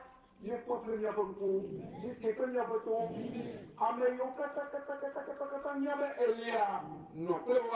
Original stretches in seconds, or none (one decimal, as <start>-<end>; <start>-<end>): 3.5-6.8